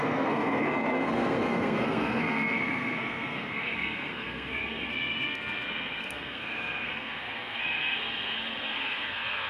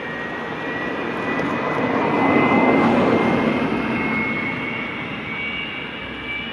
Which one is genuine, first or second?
second